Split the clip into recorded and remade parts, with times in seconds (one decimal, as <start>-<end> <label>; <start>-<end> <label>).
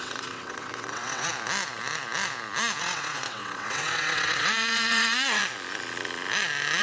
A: 0.0-1.3 remade; 1.3-2.8 recorded; 2.8-5.4 remade; 5.4-6.8 recorded